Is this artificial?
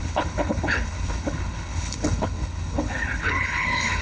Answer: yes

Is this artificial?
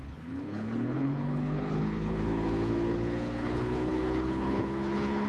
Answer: yes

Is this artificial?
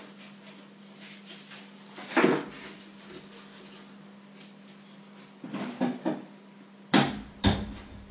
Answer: no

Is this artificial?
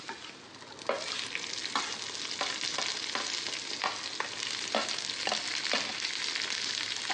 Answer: no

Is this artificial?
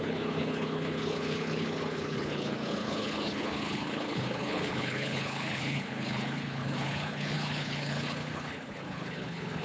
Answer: yes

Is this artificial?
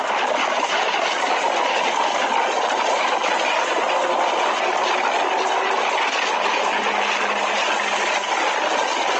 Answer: no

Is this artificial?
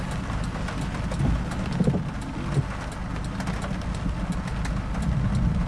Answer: no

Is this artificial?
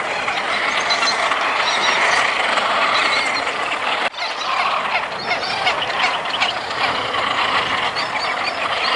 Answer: no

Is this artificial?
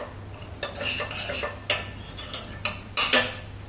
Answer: no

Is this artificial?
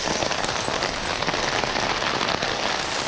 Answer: no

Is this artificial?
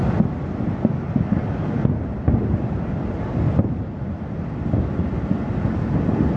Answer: no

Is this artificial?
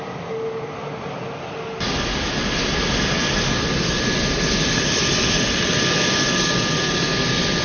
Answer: no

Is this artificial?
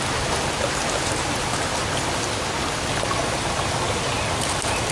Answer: no